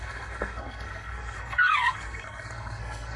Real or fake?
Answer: fake